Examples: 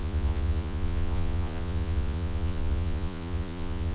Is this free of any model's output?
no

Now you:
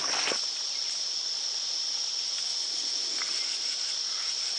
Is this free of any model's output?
yes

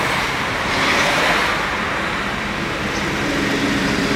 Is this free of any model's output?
no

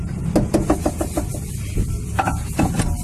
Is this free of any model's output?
yes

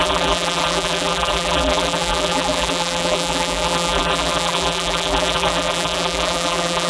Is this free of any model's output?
no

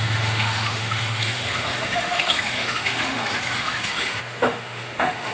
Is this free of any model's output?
no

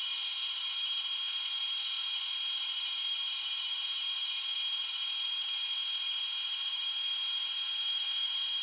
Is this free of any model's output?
no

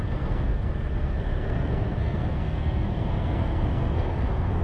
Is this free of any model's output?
no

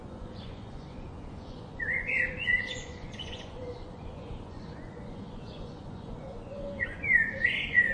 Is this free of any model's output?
no